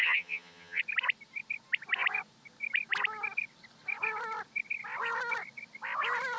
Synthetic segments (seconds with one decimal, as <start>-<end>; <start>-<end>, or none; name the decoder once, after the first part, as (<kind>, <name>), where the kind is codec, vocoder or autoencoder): 0.0-0.8 (vocoder, HiFi-GAN)